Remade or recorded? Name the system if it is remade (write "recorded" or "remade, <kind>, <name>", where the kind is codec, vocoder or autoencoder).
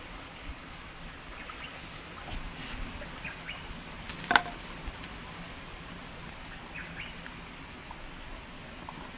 recorded